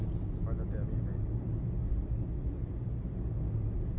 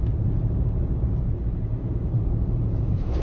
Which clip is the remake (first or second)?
second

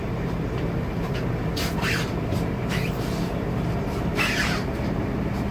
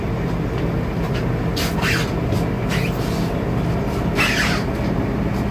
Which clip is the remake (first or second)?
first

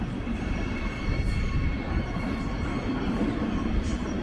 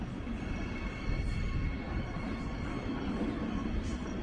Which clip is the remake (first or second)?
first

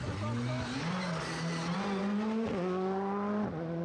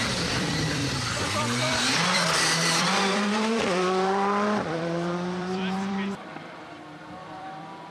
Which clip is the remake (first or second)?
second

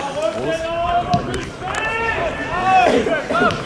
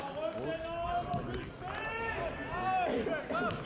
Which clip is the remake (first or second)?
first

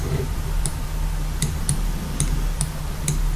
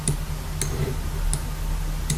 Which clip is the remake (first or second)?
first